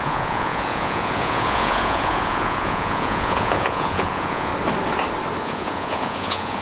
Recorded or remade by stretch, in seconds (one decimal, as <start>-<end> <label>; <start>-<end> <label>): 0.0-4.5 remade; 4.5-5.4 recorded; 5.4-6.6 remade